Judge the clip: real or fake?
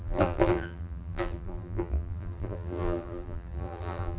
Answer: fake